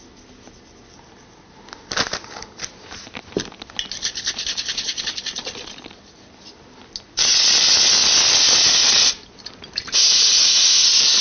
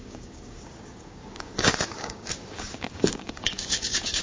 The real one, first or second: first